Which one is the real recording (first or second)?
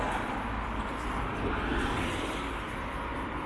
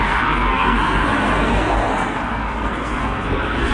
first